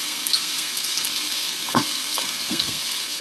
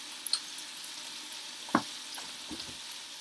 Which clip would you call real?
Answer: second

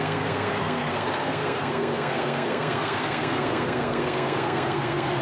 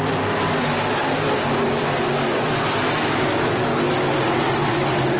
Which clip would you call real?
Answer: second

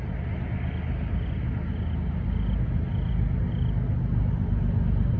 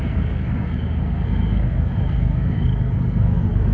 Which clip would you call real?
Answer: first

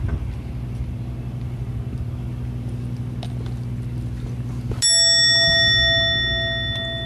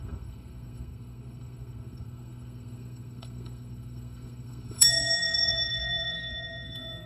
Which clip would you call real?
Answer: first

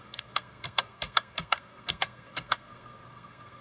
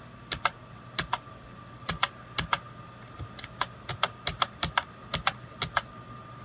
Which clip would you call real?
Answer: second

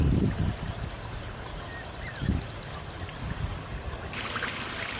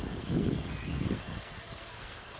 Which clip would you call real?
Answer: first